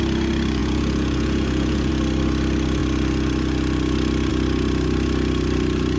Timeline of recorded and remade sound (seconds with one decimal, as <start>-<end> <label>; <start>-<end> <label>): 0.0-0.6 recorded; 0.6-1.9 remade; 1.9-6.0 recorded